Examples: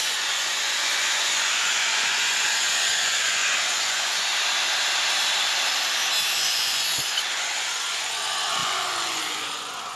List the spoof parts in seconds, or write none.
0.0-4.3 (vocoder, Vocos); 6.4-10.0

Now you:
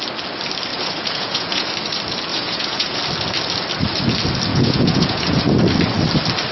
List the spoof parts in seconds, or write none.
0.7-1.7 (vocoder, Vocos); 2.3-3.0; 4.5-5.4

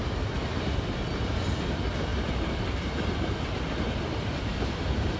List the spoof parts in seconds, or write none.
none

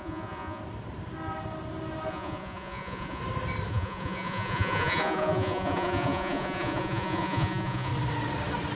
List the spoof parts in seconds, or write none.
0.0-0.6 (vocoder, Vocos); 2.1-3.2; 3.7-7.9